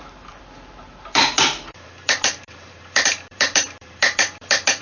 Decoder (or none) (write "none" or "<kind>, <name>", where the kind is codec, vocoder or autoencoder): vocoder, BigVGAN v2